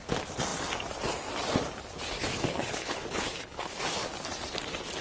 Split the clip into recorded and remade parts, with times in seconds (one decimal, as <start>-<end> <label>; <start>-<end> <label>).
0.0-2.3 recorded; 2.3-3.8 remade; 3.8-5.0 recorded